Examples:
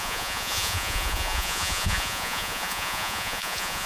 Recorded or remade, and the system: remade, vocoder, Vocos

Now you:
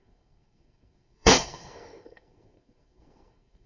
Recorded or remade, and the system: remade, codec, SNAC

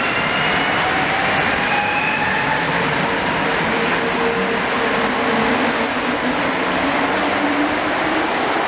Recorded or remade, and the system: recorded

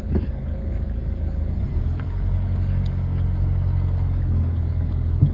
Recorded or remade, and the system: remade, codec, DAC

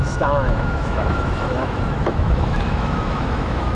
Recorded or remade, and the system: remade, autoencoder, DAC-VAE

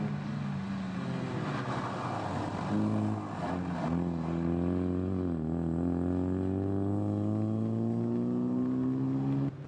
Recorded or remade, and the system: recorded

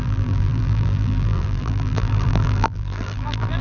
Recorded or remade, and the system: remade, vocoder, BigVGAN v2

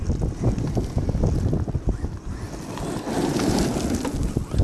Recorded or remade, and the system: recorded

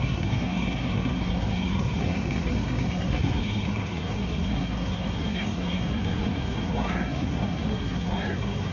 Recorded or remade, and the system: remade, codec, SNAC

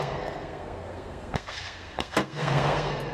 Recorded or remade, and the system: remade, codec, SNAC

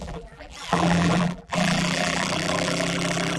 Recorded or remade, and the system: remade, vocoder, BigVGAN v2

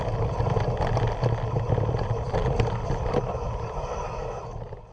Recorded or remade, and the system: recorded